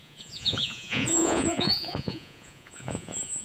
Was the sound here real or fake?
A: fake